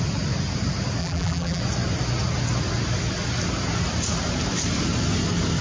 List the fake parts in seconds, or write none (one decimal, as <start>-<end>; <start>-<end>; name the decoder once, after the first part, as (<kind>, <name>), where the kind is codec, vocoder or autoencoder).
1.0-1.6 (vocoder, BigVGAN v2)